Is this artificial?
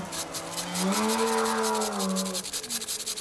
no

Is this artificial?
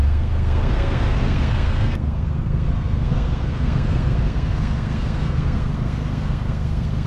yes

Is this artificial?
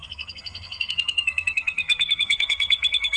yes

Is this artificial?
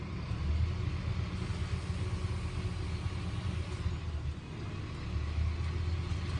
no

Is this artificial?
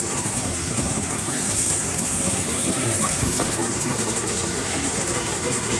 yes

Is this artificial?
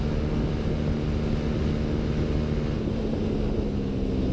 no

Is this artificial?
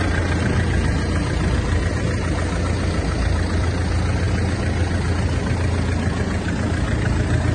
no